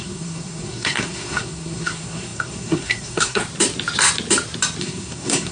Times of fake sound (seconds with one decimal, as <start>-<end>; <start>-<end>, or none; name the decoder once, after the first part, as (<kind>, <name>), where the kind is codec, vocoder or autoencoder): 0.0-3.4 (codec, SNAC); 4.8-5.5